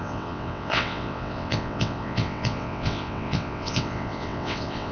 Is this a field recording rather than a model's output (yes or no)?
no